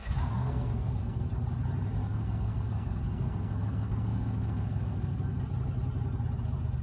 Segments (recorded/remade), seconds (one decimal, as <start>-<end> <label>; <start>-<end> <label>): 0.0-1.3 remade; 1.3-2.0 recorded; 2.0-5.4 remade; 5.4-6.8 recorded